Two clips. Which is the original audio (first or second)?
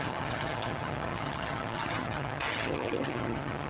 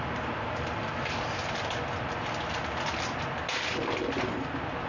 second